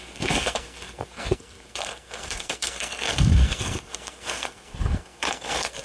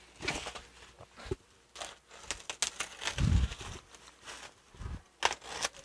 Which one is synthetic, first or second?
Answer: first